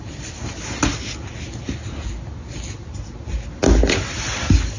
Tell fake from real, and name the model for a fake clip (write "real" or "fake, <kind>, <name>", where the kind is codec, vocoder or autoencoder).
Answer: real